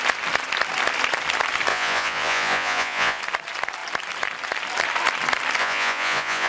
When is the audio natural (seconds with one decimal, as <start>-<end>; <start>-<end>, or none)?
0.0-1.7; 3.2-5.6